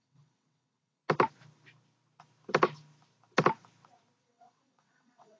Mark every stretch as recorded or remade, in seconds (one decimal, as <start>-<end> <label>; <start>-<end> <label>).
0.0-1.0 remade; 1.0-4.2 recorded; 4.2-5.4 remade